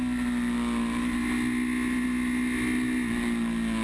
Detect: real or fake real